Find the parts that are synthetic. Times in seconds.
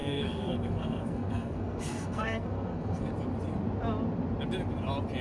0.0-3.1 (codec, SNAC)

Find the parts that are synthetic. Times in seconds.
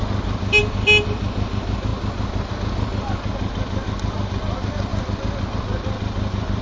none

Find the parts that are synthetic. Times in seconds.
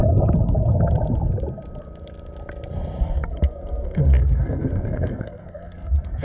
3.0-6.2 (codec, SNAC)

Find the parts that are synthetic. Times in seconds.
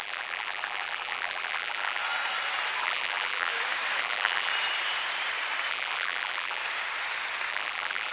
0.0-2.0 (vocoder, BigVGAN v2); 2.8-3.5; 4.0-4.5; 5.7-6.6; 7.5-8.1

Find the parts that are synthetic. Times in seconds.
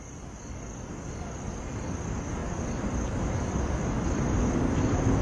none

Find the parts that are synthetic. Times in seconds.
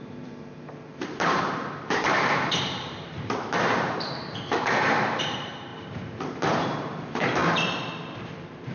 0.0-5.7 (vocoder, BigVGAN v2); 6.3-7.4; 8.1-8.7